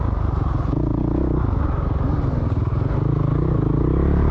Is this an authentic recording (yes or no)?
yes